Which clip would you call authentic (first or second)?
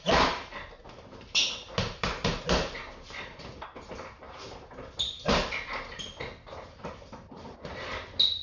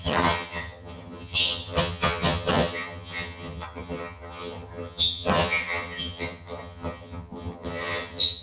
first